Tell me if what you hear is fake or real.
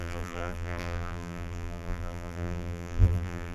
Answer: fake